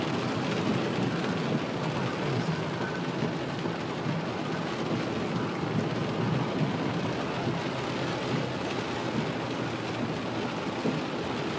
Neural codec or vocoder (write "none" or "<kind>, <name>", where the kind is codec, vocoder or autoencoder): none